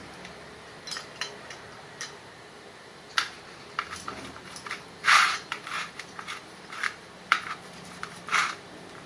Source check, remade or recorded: remade